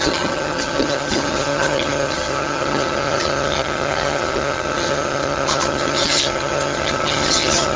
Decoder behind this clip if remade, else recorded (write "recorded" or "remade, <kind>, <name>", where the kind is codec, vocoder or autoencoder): remade, vocoder, HiFi-GAN